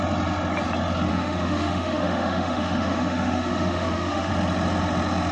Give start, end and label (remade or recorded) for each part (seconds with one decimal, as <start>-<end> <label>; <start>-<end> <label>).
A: 0.0-1.1 recorded; 1.1-4.3 remade; 4.3-5.3 recorded